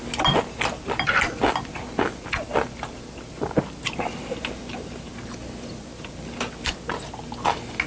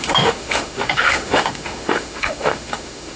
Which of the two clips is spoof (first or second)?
second